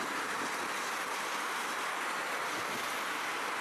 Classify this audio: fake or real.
real